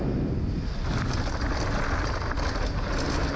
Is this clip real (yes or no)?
yes